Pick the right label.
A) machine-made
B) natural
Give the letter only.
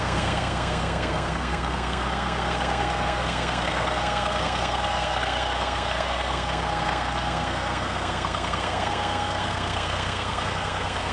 A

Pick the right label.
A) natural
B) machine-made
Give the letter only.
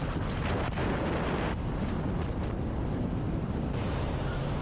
A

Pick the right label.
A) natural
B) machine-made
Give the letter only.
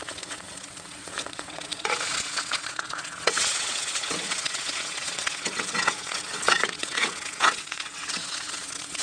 B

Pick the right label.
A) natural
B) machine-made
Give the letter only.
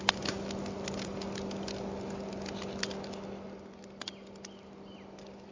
A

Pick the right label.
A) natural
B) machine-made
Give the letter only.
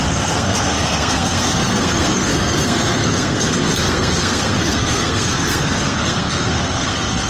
B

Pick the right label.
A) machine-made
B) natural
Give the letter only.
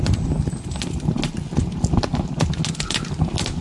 B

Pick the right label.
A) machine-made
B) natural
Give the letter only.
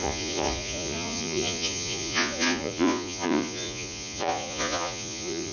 A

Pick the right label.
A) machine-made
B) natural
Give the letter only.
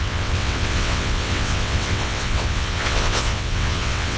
A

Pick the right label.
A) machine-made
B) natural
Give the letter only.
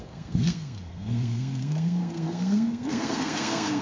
A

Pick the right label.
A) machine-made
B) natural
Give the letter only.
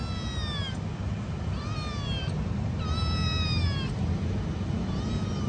B